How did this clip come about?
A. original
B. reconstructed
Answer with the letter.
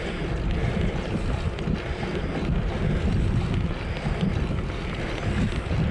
A